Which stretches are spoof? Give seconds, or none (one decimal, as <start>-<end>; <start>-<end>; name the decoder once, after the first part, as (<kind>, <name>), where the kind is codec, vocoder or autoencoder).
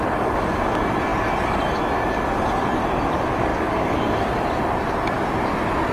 3.5-4.3 (codec, DAC)